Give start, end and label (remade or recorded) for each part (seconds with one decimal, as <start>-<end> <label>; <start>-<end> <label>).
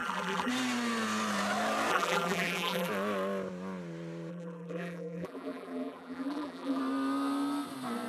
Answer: 0.0-0.5 remade; 0.5-1.9 recorded; 1.9-2.9 remade; 2.9-4.3 recorded; 4.3-6.8 remade; 6.8-8.1 recorded